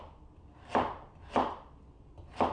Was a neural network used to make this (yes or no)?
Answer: no